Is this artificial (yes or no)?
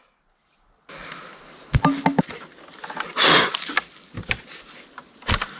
no